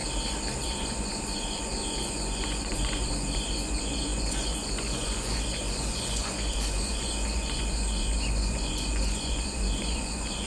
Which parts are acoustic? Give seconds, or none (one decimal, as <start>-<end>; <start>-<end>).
0.0-0.6